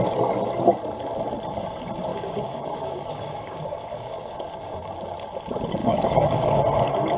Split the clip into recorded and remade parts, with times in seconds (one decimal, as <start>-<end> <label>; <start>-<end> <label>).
0.0-2.1 recorded; 2.1-4.9 remade; 4.9-5.8 recorded; 5.8-6.6 remade; 6.6-7.2 recorded